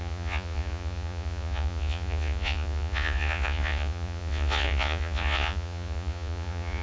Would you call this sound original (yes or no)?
no